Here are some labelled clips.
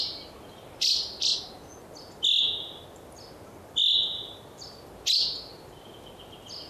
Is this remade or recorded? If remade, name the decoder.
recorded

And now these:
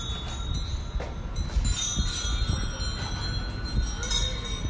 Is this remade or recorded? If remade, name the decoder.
recorded